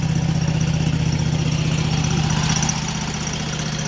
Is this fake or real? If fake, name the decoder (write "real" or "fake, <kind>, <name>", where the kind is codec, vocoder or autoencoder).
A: real